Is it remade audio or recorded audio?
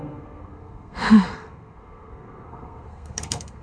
remade